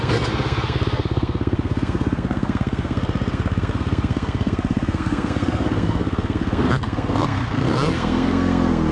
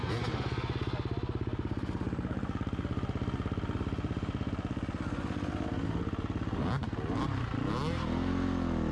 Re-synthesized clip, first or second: first